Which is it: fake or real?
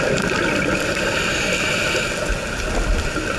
real